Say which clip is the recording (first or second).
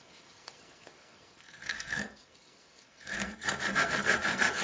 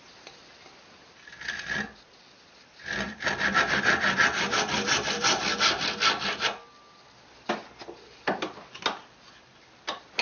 second